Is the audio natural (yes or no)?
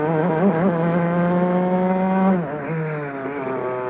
yes